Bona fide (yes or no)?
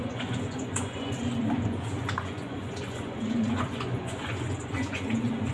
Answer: no